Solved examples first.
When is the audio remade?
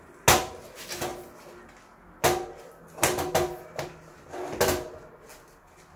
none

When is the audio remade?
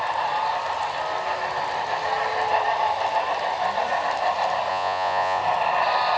4.7-5.4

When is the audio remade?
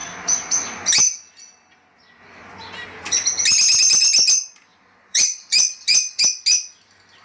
4.7-6.2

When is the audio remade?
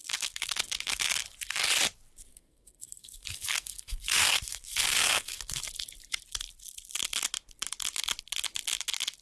0.0-1.1; 2.3-5.7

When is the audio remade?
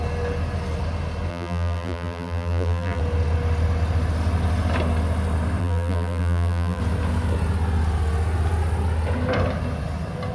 1.3-3.0; 5.6-6.8